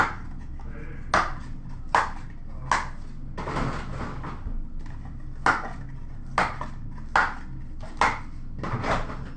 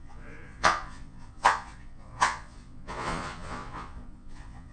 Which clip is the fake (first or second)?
second